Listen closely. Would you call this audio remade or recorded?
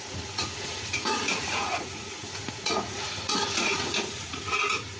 remade